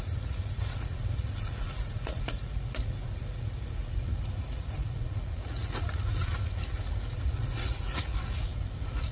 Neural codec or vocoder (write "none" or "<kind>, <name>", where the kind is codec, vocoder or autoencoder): vocoder, Vocos